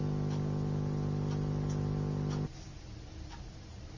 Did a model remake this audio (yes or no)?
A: no